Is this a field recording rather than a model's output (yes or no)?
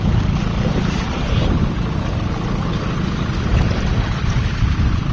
yes